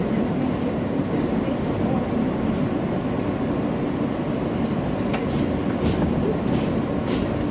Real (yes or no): yes